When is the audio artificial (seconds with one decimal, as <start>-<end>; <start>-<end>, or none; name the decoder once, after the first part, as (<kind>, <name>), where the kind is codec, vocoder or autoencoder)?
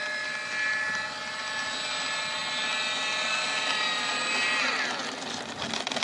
none